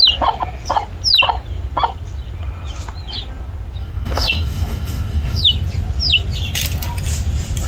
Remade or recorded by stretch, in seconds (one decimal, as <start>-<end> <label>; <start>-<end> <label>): 0.0-3.8 recorded; 3.8-5.4 remade; 5.4-7.7 recorded